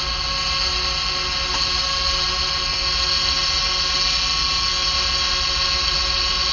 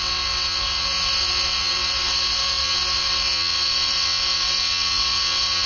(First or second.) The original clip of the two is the first